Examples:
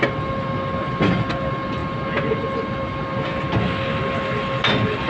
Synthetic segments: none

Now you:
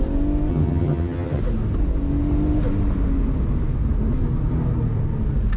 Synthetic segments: 0.5-1.4 (vocoder, HiFi-GAN)

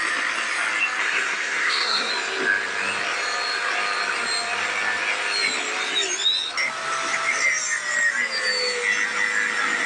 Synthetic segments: 1.0-2.1 (codec, SNAC)